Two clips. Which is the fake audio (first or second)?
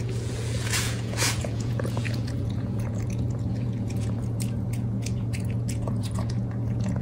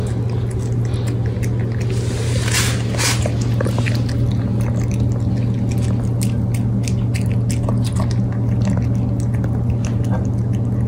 first